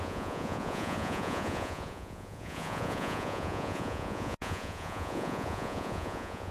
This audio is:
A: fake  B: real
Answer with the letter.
A